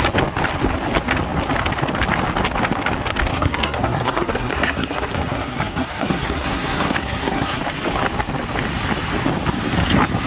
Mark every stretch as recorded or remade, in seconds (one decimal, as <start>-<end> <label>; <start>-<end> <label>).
0.0-3.3 recorded; 3.3-7.6 remade; 7.6-10.3 recorded